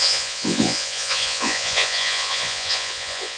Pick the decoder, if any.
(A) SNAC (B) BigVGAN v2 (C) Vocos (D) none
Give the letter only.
C